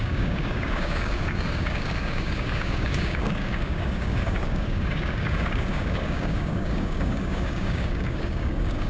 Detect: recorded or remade remade